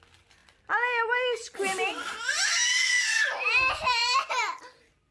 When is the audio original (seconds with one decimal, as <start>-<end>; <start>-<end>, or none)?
0.0-4.0; 4.6-5.1